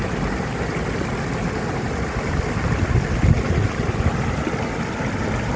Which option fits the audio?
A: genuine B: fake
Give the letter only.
A